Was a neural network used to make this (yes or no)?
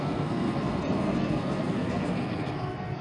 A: yes